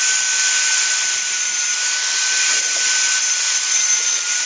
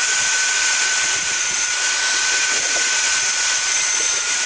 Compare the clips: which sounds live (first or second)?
first